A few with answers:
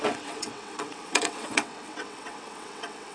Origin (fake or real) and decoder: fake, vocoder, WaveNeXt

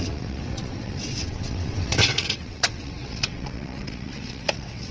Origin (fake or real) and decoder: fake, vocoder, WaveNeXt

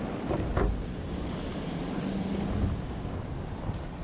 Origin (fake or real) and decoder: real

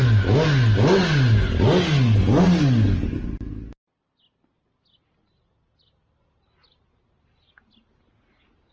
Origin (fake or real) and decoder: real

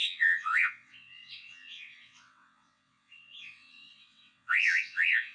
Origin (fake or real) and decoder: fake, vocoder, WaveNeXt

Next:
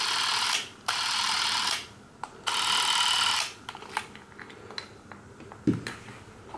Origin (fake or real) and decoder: real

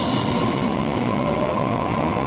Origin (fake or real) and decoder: fake, vocoder, WaveNeXt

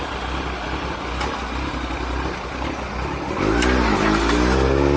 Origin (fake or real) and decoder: real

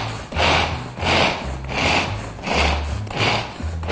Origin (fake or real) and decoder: real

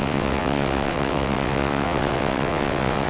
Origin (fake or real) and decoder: fake, vocoder, WaveNeXt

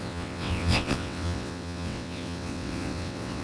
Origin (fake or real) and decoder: fake, vocoder, WaveNeXt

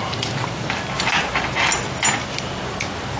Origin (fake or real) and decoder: real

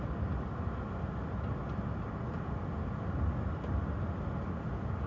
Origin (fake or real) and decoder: real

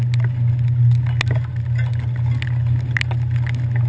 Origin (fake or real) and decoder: real